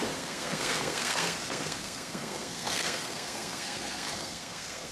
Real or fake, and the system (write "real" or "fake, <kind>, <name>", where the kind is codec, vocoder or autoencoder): fake, codec, SNAC